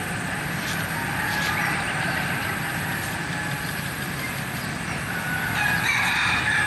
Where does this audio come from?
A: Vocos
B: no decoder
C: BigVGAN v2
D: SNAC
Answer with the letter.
B